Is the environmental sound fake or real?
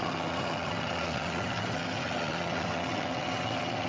fake